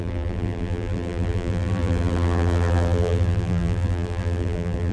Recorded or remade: remade